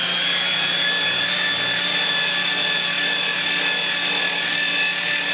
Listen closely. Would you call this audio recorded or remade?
recorded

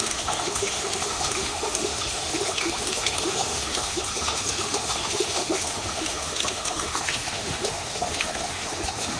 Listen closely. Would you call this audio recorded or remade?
remade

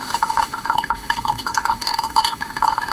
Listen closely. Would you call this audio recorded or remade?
remade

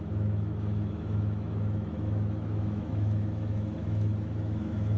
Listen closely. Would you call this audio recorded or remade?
remade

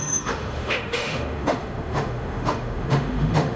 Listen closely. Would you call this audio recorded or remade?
remade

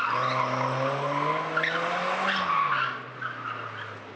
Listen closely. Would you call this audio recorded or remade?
recorded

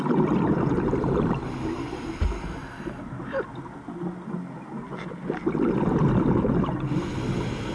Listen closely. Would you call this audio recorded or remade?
recorded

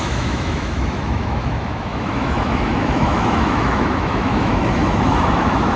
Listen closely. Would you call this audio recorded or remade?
remade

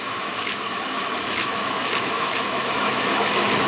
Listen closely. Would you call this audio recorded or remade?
remade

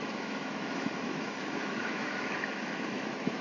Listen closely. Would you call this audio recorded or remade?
remade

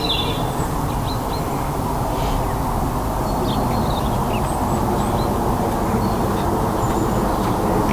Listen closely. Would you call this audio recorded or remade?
recorded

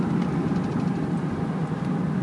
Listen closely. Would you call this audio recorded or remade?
recorded